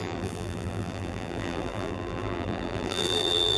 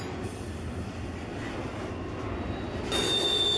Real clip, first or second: second